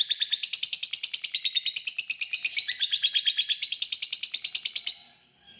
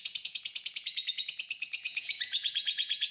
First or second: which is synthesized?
second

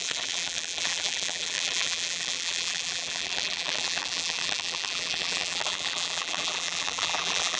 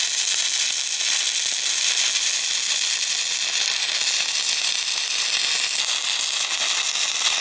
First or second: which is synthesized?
first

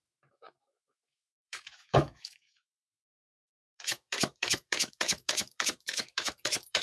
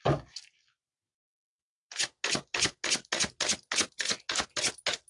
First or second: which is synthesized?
first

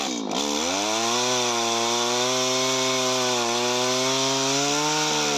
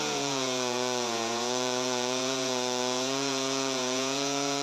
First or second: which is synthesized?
second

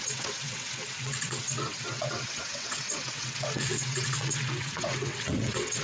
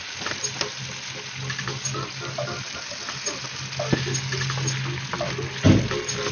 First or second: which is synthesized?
first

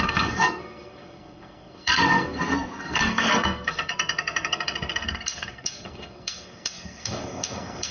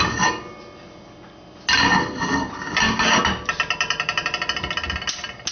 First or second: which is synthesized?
first